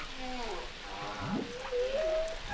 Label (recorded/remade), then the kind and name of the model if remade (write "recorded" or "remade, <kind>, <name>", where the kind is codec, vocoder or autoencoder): recorded